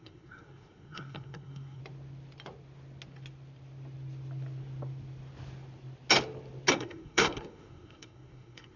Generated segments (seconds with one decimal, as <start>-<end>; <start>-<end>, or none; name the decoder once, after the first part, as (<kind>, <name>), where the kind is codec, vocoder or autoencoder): 0.0-1.8 (codec, SNAC); 6.7-8.8